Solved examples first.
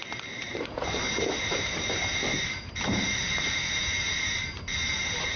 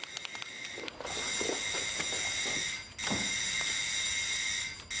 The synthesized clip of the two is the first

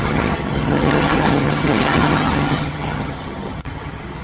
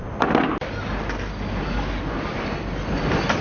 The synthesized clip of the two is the first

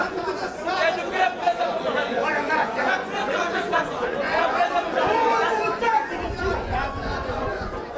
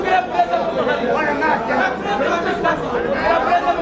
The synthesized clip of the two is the first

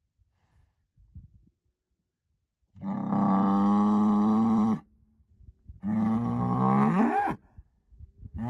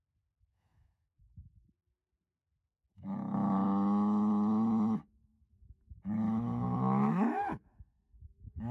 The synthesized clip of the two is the second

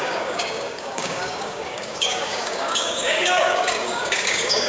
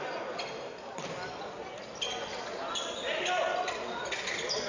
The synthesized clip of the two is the first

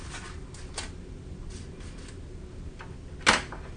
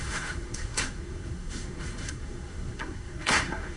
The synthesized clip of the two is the second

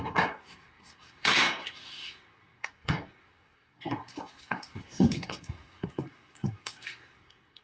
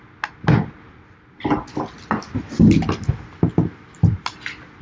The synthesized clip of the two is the first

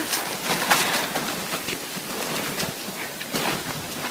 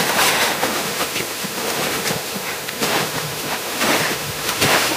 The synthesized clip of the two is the second